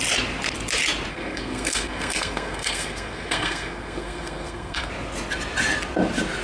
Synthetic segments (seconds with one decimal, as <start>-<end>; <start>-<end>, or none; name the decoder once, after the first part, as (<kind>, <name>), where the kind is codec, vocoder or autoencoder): 1.1-4.9 (codec, SNAC)